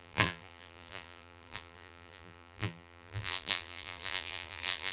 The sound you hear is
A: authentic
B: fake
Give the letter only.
B